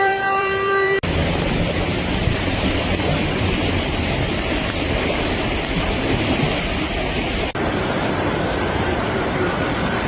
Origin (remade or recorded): remade